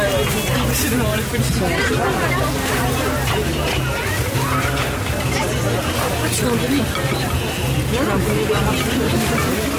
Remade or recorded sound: recorded